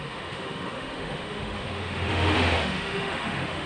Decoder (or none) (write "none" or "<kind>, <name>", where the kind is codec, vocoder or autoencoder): autoencoder, DAC-VAE